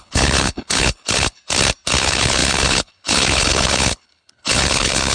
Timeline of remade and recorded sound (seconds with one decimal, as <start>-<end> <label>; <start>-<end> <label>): 0.0-1.4 remade; 1.4-2.0 recorded; 2.0-5.1 remade